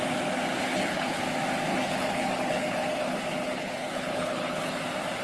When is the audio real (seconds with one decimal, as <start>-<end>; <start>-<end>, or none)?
0.0-0.6; 1.2-1.7; 4.8-5.2